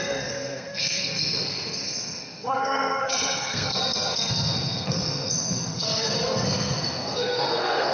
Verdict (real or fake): fake